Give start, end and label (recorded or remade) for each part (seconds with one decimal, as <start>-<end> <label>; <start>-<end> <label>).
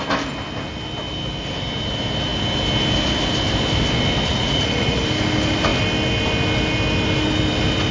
0.0-4.3 recorded; 4.3-5.0 remade; 5.0-7.9 recorded